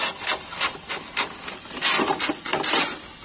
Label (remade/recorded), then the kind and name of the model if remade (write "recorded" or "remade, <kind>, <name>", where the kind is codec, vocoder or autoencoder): recorded